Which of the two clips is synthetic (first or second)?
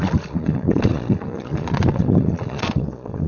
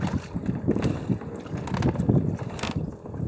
first